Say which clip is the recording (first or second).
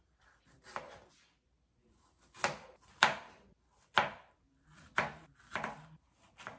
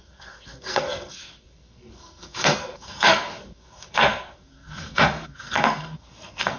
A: first